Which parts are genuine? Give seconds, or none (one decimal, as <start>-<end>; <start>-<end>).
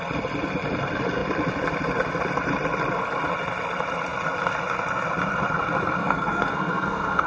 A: 0.0-6.0